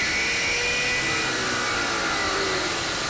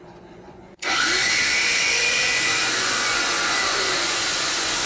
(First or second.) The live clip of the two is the first